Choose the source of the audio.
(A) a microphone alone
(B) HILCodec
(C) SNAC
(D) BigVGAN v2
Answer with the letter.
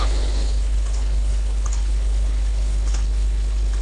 B